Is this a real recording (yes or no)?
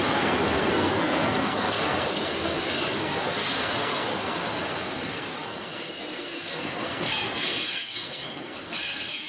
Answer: no